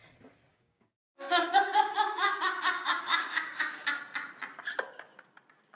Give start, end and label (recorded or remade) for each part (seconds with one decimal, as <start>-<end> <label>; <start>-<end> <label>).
0.0-0.5 recorded; 0.5-4.0 remade; 4.0-5.8 recorded